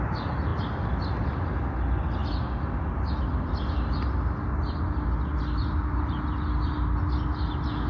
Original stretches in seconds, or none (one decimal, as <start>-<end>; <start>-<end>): 0.0-7.9